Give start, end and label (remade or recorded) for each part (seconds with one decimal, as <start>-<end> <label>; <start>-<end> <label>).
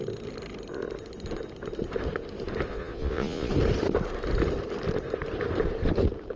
0.0-2.7 recorded; 2.7-3.5 remade; 3.5-6.4 recorded